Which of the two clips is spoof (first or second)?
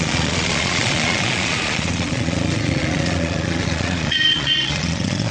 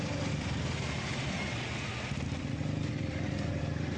first